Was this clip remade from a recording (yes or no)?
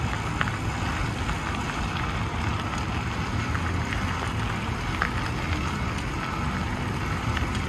no